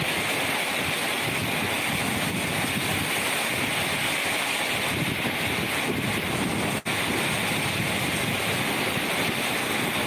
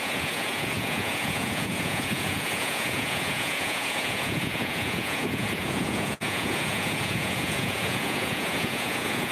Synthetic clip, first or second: second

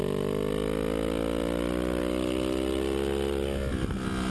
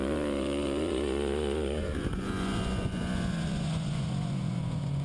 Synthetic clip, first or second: second